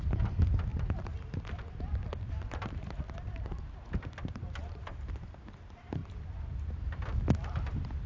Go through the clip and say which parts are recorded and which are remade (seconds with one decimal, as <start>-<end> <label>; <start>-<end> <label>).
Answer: 0.0-0.7 recorded; 0.7-5.5 remade; 5.5-6.0 recorded; 6.0-8.1 remade

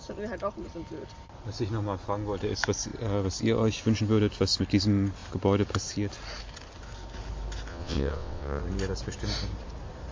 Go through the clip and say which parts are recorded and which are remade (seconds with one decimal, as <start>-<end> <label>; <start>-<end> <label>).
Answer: 0.0-7.7 recorded; 7.7-8.6 remade; 8.6-10.1 recorded

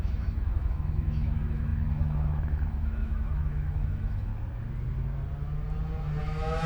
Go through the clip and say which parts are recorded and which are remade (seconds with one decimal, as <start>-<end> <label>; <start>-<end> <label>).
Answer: 0.0-4.3 remade; 4.3-6.2 recorded; 6.2-6.7 remade

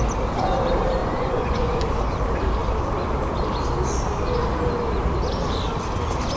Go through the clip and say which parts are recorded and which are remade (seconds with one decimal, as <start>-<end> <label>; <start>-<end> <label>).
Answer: 0.0-1.0 recorded; 1.0-1.8 remade; 1.8-6.4 recorded